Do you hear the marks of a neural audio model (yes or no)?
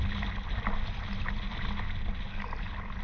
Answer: no